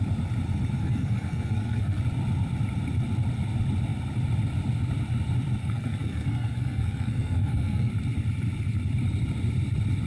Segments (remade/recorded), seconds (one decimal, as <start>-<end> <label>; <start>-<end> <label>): 0.0-0.8 recorded; 0.8-2.0 remade; 2.0-5.6 recorded; 5.6-7.9 remade; 7.9-10.1 recorded